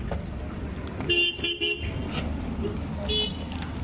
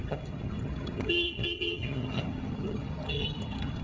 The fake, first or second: second